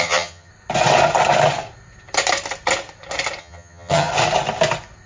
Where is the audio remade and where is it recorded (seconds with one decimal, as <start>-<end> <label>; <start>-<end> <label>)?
0.0-0.5 remade; 0.5-3.4 recorded; 3.4-4.1 remade; 4.1-5.1 recorded